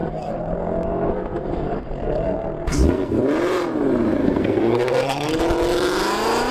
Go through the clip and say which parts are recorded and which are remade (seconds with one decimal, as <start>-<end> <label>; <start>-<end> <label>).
0.0-3.2 remade; 3.2-4.2 recorded; 4.2-5.4 remade; 5.4-6.5 recorded